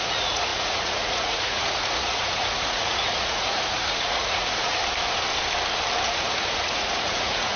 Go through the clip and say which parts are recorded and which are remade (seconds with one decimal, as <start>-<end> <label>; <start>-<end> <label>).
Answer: 0.0-4.8 remade; 4.8-6.1 recorded; 6.1-7.6 remade